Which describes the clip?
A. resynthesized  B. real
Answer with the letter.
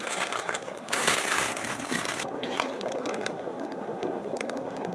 A